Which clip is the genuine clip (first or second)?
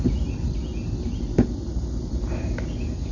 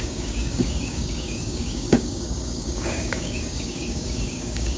first